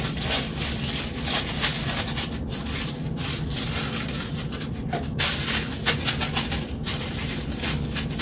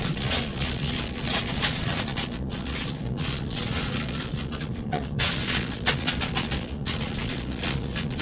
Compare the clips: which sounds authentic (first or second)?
first